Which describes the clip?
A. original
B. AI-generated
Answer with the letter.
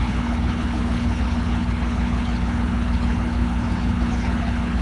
B